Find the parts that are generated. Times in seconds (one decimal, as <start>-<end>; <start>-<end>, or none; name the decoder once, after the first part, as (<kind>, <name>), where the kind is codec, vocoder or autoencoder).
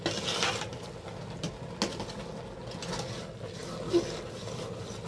none